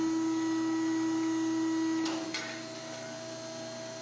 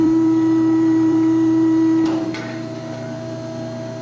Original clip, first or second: first